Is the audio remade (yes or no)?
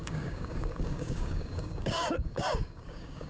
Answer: yes